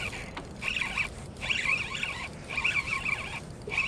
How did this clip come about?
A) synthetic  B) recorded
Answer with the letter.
B